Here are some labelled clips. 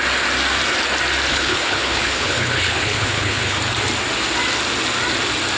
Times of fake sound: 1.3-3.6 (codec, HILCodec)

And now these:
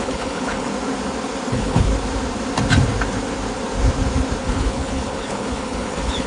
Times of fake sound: 0.0-0.7 (codec, HILCodec); 1.5-1.9; 4.4-6.3

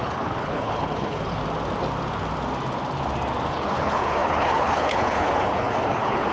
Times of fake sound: 0.0-1.4 (codec, HILCodec); 3.5-6.3

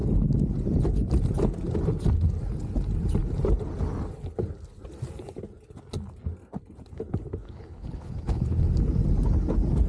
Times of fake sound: 7.4-8.6 (codec, HILCodec)

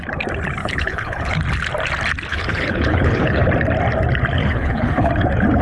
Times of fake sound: 0.6-1.4 (codec, HILCodec); 2.3-3.5; 4.4-5.1